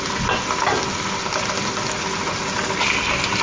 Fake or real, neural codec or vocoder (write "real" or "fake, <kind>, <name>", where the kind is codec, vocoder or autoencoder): real